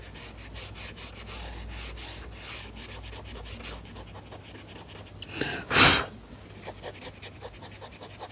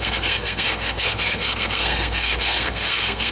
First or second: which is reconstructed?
second